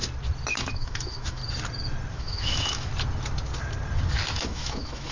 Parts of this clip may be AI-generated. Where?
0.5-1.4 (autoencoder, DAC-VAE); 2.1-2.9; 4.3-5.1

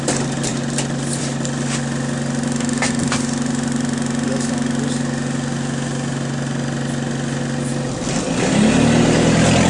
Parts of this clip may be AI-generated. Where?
none

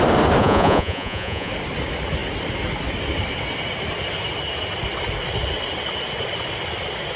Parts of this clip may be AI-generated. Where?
0.4-1.5 (vocoder, Vocos)

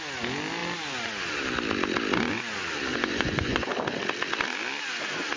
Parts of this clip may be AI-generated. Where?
2.9-3.7 (vocoder, Vocos)

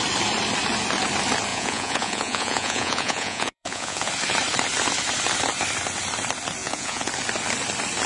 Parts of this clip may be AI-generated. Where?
1.5-4.1 (vocoder, Vocos); 6.6-7.1

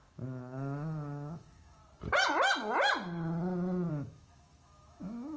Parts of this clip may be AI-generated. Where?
0.0-1.8 (autoencoder, DAC-VAE); 3.9-5.4